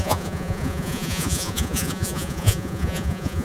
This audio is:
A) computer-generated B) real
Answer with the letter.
A